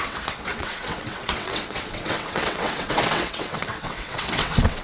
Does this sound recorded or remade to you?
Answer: remade